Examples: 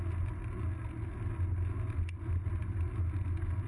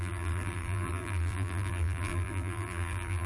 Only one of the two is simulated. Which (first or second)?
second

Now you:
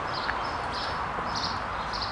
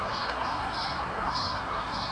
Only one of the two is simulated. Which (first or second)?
second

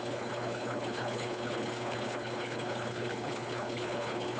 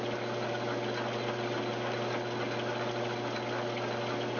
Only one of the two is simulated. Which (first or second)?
first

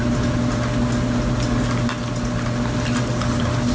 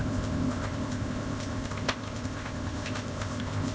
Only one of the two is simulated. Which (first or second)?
second